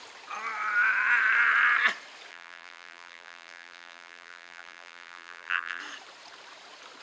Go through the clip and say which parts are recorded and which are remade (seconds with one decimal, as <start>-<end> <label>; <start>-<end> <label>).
0.0-2.3 recorded; 2.3-5.8 remade; 5.8-7.0 recorded